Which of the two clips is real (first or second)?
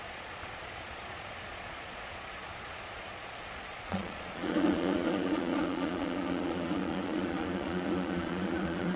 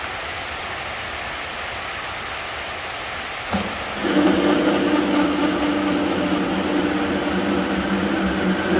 second